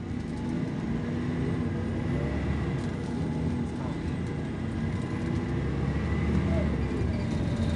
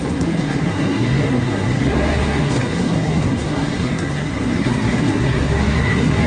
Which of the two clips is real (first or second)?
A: first